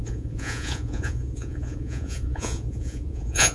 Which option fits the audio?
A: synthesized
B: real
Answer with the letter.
A